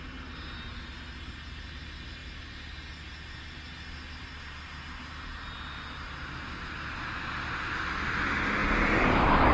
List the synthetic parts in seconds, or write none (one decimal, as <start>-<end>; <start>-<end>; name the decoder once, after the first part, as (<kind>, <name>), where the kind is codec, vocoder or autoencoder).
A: none